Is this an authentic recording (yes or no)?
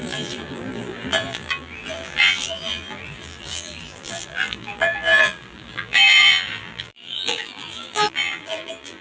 no